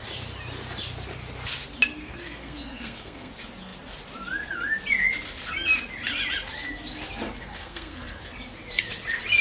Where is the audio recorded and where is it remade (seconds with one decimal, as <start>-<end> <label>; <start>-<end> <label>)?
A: 0.0-1.9 recorded; 1.9-3.3 remade; 3.3-7.4 recorded; 7.4-8.2 remade; 8.2-9.4 recorded